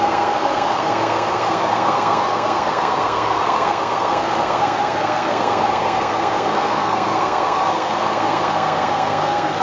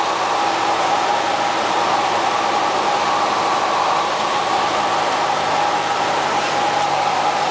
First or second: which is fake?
first